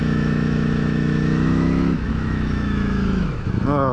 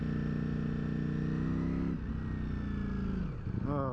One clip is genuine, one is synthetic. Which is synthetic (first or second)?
first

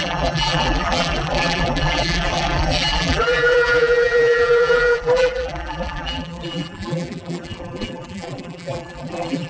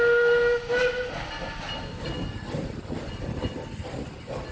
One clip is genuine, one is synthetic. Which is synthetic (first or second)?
first